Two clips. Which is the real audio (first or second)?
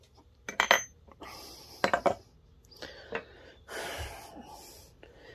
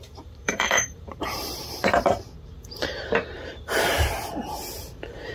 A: first